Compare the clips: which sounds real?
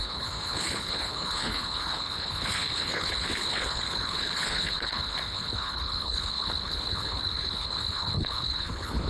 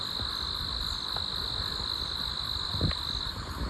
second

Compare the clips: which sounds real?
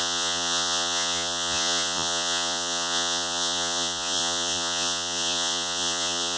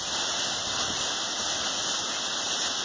second